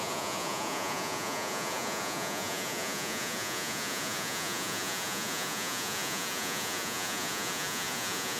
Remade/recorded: remade